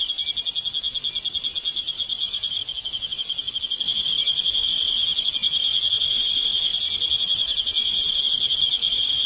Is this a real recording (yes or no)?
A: yes